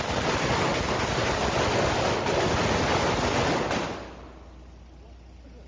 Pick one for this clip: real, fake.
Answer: real